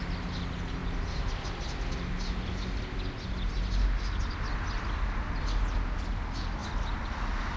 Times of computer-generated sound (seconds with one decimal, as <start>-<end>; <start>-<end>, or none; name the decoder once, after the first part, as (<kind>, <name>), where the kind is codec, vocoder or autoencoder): none